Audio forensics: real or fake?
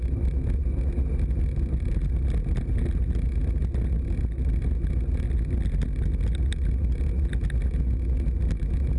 real